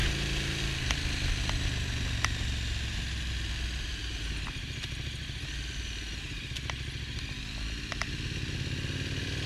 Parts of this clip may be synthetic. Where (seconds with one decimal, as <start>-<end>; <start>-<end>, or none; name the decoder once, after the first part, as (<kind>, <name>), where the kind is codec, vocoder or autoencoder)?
none